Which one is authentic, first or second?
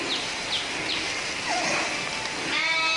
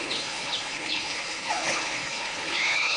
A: first